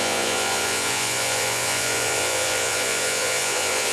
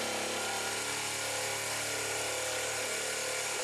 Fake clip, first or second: first